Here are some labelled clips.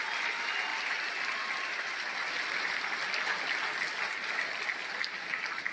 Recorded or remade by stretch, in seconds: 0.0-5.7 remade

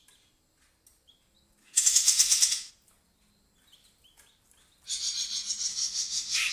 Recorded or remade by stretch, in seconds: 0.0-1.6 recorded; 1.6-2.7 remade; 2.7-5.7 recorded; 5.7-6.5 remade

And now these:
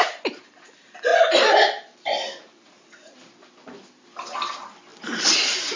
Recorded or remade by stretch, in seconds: 0.0-1.1 recorded; 1.1-3.4 remade; 3.4-4.9 recorded; 4.9-5.8 remade

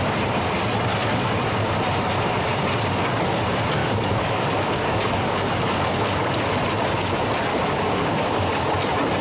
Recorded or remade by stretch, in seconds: 0.0-3.8 recorded; 3.8-6.3 remade; 6.3-7.5 recorded; 7.5-8.7 remade; 8.7-9.2 recorded